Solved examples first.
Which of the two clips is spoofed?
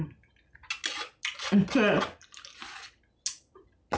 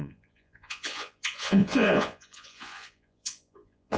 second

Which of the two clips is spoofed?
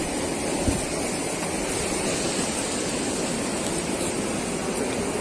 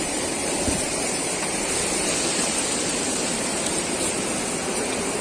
second